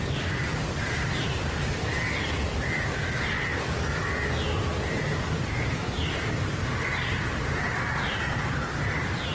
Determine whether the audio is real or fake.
fake